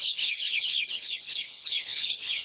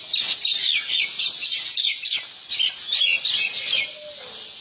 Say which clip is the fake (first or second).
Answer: first